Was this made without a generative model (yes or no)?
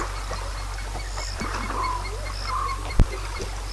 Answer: yes